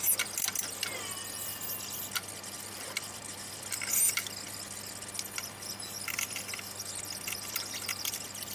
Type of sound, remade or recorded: recorded